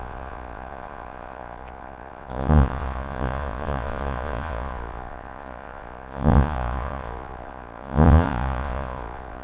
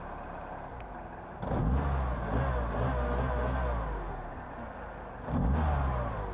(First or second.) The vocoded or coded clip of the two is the first